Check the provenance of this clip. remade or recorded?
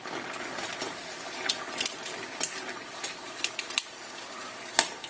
recorded